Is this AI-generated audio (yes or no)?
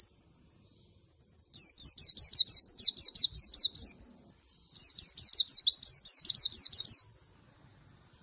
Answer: no